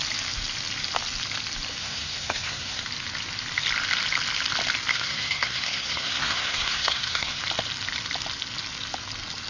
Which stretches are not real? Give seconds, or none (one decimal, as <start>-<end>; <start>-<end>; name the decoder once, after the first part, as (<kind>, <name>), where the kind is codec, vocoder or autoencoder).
1.8-2.8 (codec, SNAC); 4.9-7.4